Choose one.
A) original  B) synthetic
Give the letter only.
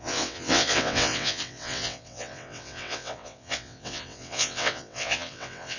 B